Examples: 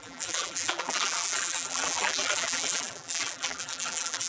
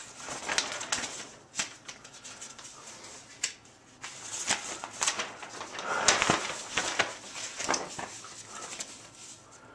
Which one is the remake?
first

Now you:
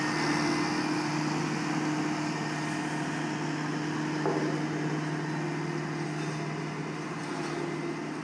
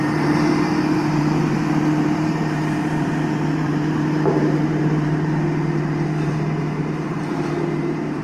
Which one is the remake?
second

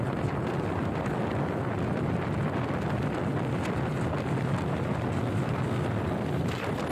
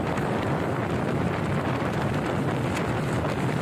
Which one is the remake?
second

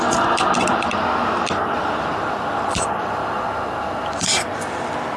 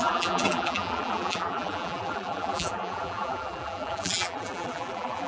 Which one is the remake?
second